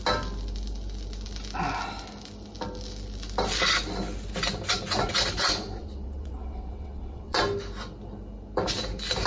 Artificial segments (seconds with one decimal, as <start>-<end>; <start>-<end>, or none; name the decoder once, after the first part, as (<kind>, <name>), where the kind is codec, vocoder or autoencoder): 5.8-7.4 (vocoder, WaveNeXt)